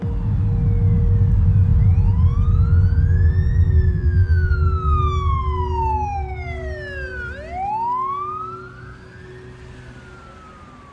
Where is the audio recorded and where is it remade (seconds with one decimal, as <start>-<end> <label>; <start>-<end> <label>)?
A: 0.0-3.9 recorded; 3.9-4.5 remade; 4.5-10.9 recorded